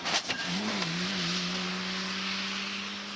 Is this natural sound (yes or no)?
yes